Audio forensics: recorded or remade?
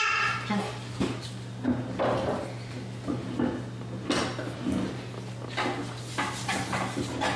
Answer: recorded